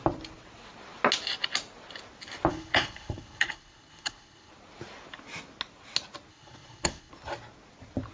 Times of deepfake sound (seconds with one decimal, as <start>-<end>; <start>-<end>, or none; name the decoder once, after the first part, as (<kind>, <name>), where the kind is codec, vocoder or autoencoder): 2.5-4.5 (codec, HILCodec); 6.3-7.1